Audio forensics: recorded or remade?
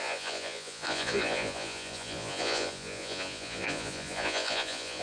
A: remade